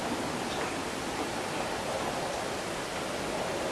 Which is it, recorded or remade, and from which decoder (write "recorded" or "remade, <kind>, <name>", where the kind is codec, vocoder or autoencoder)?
recorded